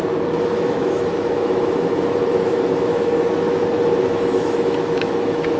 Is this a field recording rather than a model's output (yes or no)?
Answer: no